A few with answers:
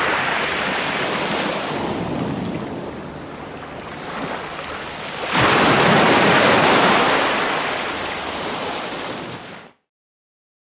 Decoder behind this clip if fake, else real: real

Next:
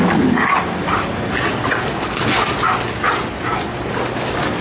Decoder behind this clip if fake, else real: real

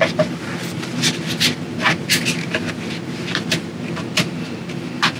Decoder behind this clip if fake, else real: real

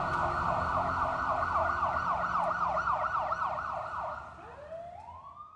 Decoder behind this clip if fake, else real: real